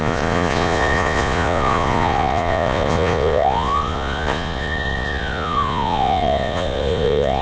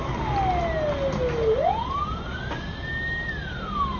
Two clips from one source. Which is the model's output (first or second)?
first